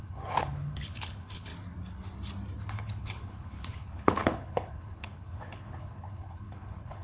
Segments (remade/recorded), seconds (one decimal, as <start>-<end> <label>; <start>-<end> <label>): 0.0-1.5 remade; 1.5-2.7 recorded; 2.7-7.0 remade